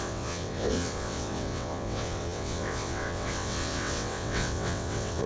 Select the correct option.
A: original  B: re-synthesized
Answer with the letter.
B